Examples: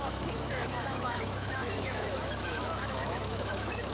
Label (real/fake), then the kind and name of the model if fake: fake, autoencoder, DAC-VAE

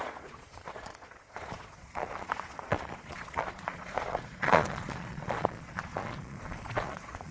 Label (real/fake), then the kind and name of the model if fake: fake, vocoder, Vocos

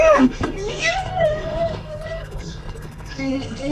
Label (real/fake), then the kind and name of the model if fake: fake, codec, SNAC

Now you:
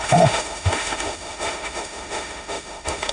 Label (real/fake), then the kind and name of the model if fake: fake, autoencoder, DAC-VAE